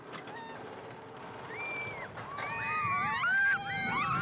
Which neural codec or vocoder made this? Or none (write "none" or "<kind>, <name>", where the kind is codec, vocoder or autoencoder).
none